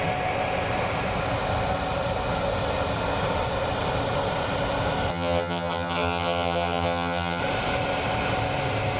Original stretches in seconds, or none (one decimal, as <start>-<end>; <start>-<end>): 0.0-5.1; 7.4-9.0